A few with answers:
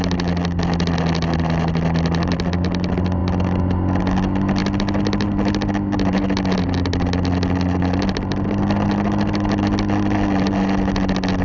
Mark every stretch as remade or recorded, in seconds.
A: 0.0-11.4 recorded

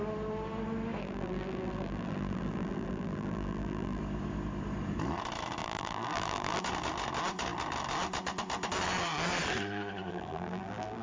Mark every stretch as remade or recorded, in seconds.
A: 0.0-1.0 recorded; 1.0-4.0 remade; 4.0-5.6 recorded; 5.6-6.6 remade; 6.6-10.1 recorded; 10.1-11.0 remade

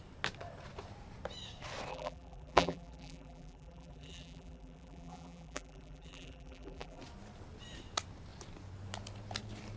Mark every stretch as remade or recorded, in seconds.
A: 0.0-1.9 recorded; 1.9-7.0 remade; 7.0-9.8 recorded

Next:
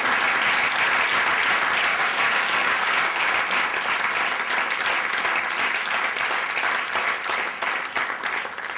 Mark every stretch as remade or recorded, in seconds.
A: 0.0-1.9 recorded; 1.9-3.3 remade; 3.3-8.8 recorded